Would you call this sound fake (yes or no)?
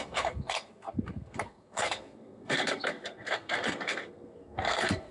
yes